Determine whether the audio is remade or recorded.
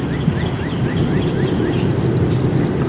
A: recorded